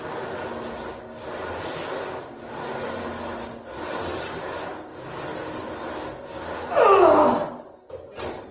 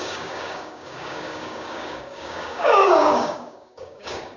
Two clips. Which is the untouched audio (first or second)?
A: first